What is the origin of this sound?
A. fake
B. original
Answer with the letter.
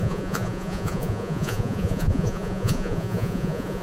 A